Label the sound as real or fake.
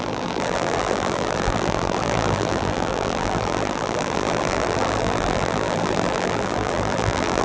fake